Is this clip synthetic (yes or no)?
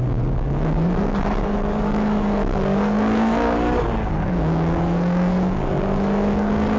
yes